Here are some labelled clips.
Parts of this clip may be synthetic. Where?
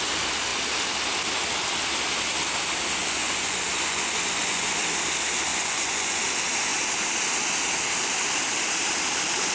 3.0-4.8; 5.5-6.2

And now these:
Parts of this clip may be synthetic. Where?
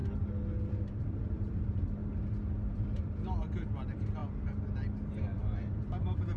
0.7-2.0; 2.7-4.2; 5.2-6.4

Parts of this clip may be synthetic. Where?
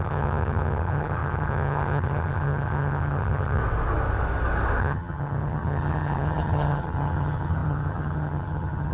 0.0-3.6; 4.8-8.9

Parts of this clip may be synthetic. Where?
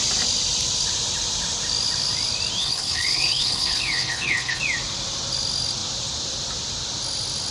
2.6-4.6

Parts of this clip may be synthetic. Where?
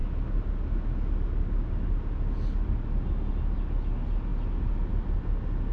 none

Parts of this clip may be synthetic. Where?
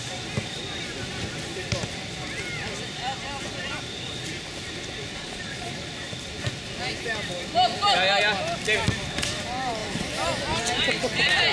5.1-5.7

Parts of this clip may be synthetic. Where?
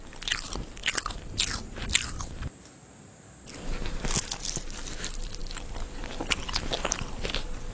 none